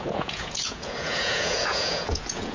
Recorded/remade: remade